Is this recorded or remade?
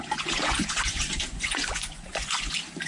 remade